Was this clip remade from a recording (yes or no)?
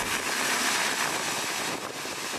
no